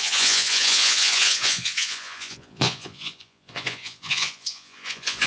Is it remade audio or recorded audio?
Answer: remade